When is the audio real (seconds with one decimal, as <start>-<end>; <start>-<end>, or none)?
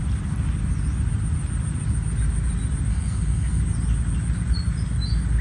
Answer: 0.0-2.9; 3.6-5.4